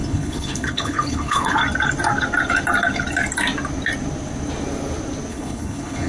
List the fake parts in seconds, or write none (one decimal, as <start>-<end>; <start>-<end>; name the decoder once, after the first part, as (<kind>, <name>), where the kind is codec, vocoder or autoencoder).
0.0-1.6 (codec, HILCodec); 5.3-6.1